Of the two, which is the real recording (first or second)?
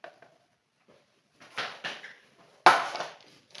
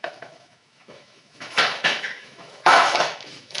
first